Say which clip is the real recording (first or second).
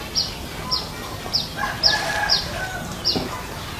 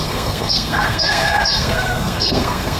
first